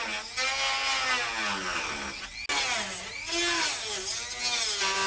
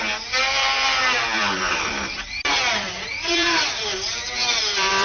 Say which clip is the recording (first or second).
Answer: first